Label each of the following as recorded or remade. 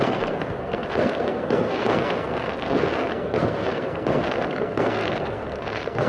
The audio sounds remade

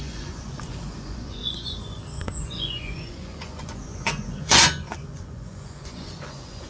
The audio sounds remade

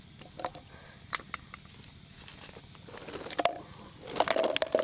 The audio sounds recorded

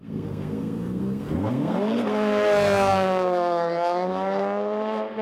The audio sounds remade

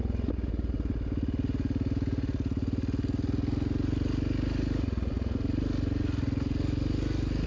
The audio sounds recorded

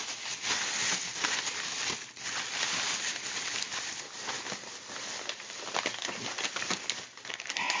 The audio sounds recorded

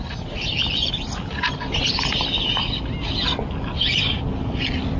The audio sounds recorded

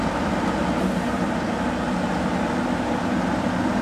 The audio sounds recorded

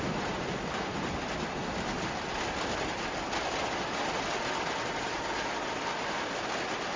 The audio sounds recorded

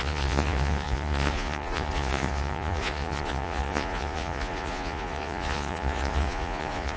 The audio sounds remade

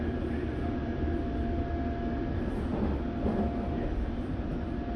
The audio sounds recorded